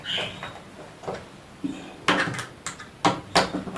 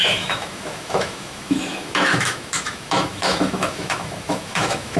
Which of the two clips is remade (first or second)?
second